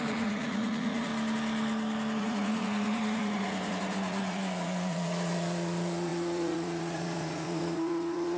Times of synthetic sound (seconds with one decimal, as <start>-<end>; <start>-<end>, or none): 0.0-1.1; 2.2-8.4